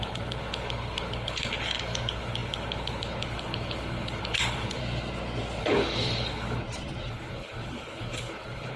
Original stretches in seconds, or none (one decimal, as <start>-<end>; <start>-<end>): 4.8-5.6; 6.6-7.1